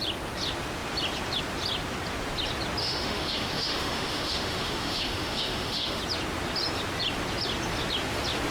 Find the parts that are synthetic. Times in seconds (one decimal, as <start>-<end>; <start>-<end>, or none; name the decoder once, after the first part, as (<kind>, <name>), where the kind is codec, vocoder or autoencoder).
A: 2.8-6.0 (autoencoder, DAC-VAE)